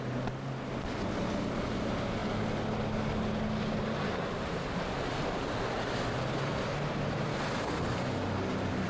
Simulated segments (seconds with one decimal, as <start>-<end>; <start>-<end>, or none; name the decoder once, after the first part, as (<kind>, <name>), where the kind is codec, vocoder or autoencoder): none